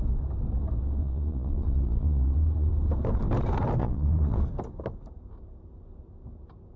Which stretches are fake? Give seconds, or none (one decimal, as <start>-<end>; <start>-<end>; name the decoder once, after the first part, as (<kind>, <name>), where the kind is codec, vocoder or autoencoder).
1.0-2.7 (vocoder, Vocos); 3.8-4.4